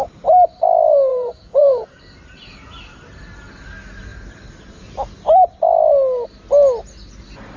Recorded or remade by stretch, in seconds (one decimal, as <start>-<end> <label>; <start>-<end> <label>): 0.0-1.1 recorded; 1.1-2.0 remade; 2.0-7.6 recorded